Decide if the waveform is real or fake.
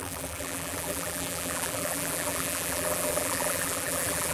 fake